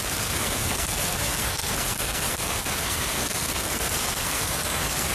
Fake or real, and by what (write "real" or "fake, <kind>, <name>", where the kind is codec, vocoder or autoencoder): fake, codec, SNAC